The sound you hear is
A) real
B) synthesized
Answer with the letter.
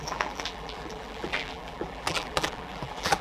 B